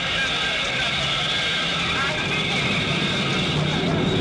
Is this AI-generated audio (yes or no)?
no